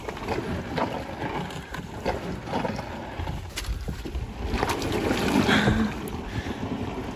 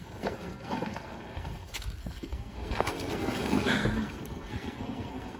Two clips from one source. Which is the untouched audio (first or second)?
first